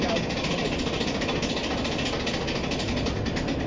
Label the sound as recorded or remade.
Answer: recorded